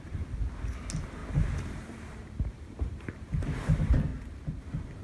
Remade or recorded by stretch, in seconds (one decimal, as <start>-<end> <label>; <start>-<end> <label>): 0.0-1.2 recorded; 1.2-2.3 remade; 2.3-5.0 recorded